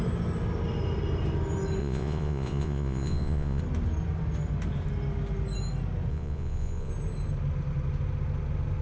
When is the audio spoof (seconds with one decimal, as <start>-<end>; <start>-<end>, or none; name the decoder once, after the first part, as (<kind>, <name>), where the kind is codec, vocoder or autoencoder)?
1.8-3.6 (vocoder, Vocos); 6.1-6.9